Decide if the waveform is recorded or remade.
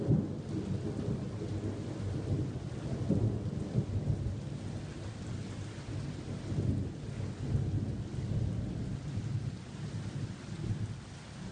recorded